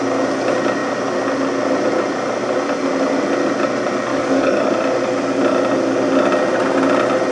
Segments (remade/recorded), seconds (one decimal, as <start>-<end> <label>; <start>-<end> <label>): 0.0-4.1 recorded; 4.1-4.7 remade; 4.7-7.3 recorded